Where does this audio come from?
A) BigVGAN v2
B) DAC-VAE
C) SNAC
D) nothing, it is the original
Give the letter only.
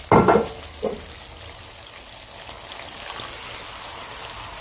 D